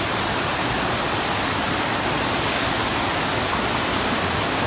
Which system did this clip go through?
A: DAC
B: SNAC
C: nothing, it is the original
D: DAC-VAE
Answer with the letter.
C